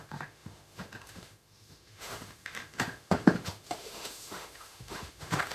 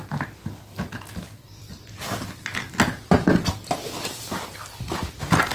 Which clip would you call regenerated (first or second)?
first